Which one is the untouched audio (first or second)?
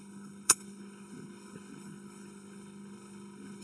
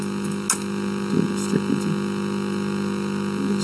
second